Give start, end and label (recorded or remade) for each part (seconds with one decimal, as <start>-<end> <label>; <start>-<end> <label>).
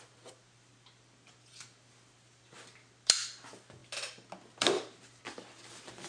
0.0-6.1 recorded